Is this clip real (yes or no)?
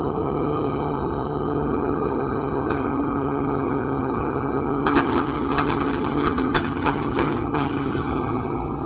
no